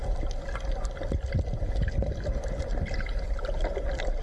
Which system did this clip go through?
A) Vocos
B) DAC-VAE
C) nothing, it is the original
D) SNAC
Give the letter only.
C